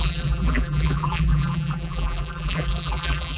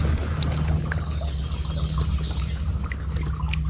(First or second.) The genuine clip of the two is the second